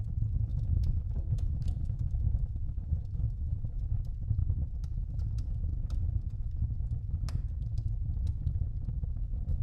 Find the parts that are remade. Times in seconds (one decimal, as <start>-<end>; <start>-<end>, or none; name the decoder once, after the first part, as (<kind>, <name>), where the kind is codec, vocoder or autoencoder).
0.5-3.8 (autoencoder, DAC-VAE)